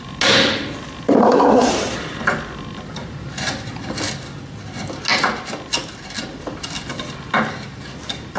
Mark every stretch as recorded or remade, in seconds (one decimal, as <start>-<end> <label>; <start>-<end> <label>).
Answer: 0.0-1.2 recorded; 1.2-1.7 remade; 1.7-8.4 recorded